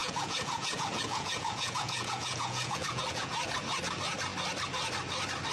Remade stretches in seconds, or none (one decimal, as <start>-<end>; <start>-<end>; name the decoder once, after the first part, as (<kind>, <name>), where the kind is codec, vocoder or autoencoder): 0.0-3.3 (vocoder, Vocos)